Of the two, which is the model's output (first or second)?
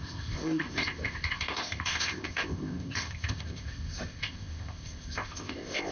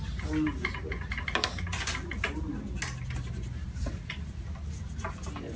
first